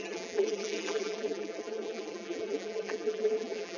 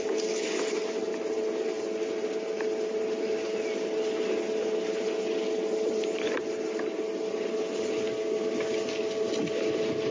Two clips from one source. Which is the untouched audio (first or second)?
second